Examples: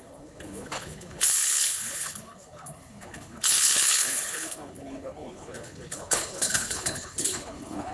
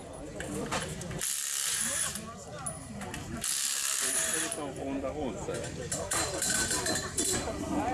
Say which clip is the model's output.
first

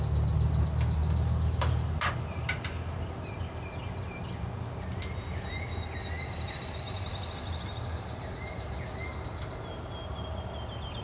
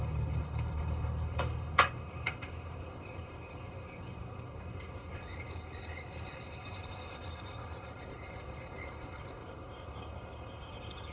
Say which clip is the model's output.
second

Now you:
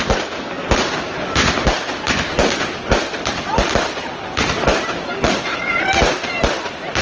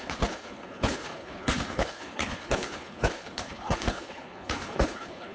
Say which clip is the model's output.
second